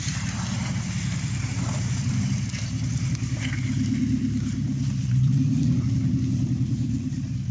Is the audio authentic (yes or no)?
no